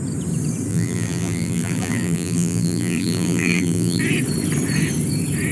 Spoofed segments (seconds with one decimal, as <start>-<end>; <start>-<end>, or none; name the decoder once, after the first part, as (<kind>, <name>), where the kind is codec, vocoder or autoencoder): 0.7-4.0 (vocoder, BigVGAN v2)